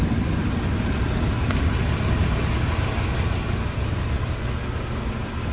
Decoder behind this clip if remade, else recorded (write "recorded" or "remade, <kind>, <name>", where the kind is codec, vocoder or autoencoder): recorded